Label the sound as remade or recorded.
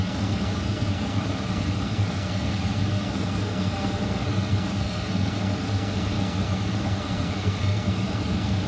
remade